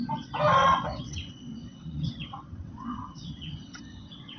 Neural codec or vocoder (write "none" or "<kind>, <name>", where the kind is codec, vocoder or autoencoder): vocoder, WaveNeXt